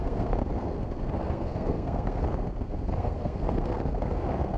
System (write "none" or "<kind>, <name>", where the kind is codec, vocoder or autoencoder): codec, SNAC